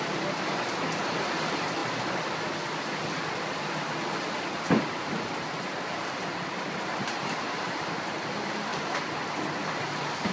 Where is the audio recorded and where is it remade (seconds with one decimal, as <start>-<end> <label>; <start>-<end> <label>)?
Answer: 0.0-10.3 recorded